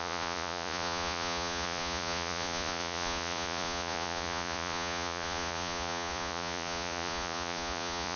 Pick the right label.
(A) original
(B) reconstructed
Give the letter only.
B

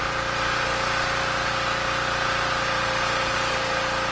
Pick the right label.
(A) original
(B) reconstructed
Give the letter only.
A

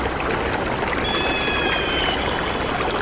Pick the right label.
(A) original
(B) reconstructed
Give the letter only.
A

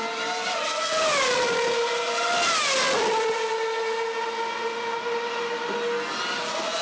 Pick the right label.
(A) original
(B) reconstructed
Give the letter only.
A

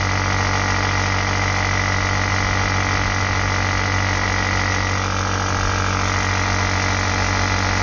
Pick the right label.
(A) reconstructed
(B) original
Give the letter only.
B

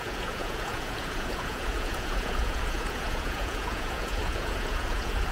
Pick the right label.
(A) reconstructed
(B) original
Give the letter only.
A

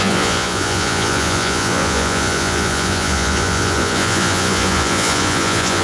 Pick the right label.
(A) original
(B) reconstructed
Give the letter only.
B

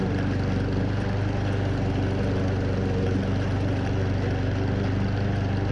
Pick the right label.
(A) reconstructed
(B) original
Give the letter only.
B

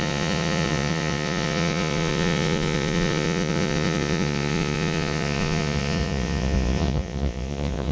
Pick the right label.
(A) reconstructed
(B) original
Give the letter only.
A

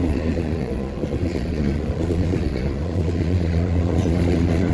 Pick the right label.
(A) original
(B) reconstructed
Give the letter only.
B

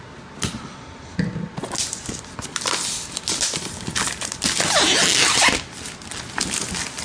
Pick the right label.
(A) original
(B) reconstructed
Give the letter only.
A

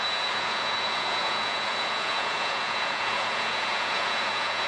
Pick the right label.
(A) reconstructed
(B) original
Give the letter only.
A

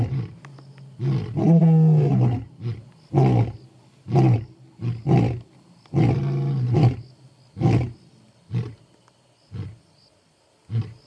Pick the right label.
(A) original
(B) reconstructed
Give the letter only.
A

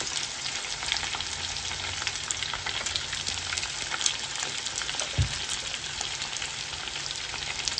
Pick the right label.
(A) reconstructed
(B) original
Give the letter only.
B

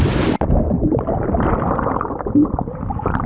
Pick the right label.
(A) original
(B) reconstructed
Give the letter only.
A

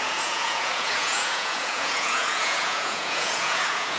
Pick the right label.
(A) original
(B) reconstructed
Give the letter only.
B